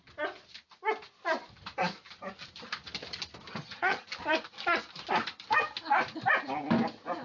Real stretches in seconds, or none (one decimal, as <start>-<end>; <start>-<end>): 0.0-3.5; 4.1-7.2